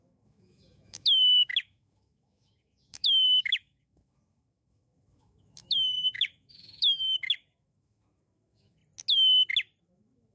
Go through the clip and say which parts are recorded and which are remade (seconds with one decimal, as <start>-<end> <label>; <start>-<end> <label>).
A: 0.0-8.8 remade; 8.8-9.8 recorded; 9.8-10.3 remade